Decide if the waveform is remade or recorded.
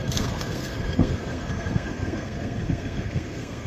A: remade